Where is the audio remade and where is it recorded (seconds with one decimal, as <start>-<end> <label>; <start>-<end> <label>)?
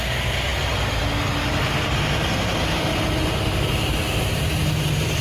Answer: 0.0-5.2 recorded